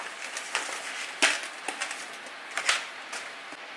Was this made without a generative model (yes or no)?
yes